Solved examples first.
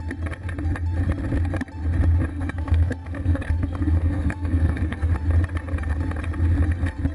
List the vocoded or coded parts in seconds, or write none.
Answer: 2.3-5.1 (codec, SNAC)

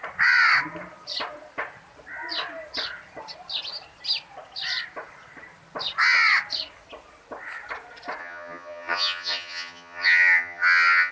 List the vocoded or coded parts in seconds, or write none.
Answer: 8.2-11.1 (vocoder, HiFi-GAN)

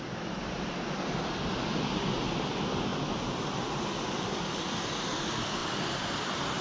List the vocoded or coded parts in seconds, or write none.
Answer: none

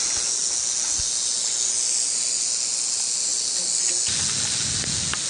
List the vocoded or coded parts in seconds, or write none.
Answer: none

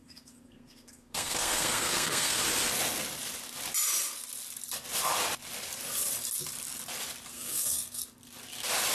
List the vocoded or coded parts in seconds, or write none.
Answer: 0.0-2.4 (codec, SNAC); 7.3-8.0

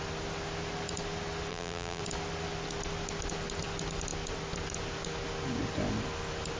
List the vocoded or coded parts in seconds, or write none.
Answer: 1.5-2.0 (vocoder, BigVGAN v2)

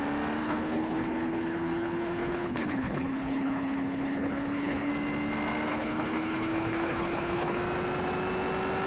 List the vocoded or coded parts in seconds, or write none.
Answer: 0.4-4.9 (codec, HILCodec); 5.7-7.6